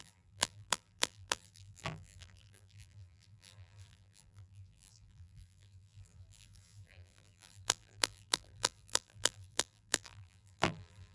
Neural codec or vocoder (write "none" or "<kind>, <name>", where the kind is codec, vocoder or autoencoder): vocoder, BigVGAN v2